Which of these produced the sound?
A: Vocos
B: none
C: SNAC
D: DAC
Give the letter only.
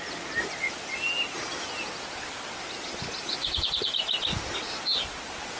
B